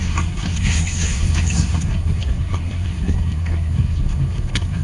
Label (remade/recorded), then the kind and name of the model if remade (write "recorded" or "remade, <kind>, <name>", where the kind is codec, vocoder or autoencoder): remade, codec, SNAC